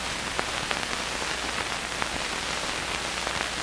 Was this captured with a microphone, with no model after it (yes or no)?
yes